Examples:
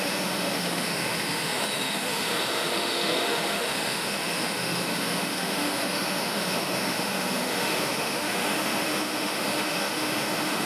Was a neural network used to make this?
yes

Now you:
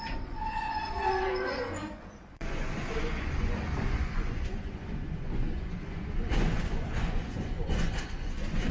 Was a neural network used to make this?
yes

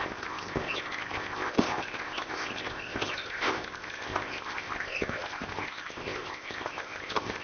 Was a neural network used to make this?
yes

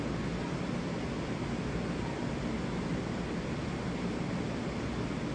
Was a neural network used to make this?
no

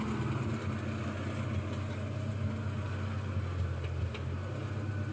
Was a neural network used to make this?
no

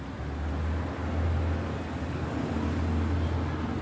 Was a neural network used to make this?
no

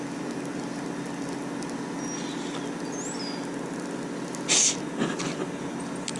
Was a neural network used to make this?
no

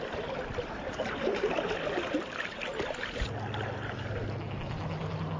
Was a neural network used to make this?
no